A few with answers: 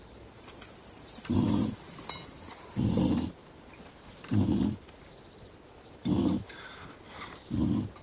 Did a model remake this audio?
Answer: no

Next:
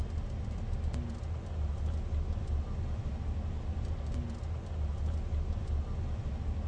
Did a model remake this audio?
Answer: no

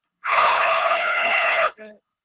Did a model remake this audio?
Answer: yes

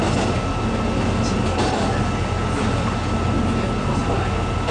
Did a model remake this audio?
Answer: no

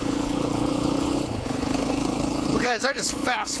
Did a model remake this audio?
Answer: yes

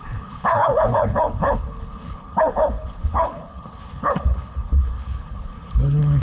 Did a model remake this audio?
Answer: yes